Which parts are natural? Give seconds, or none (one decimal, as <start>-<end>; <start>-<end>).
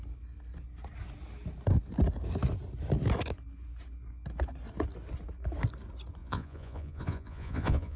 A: 0.0-6.2